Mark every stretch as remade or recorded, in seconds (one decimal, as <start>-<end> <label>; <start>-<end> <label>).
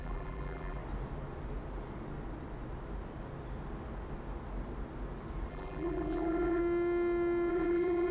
0.0-0.8 remade; 0.8-5.5 recorded; 5.5-6.6 remade; 6.6-7.5 recorded; 7.5-8.1 remade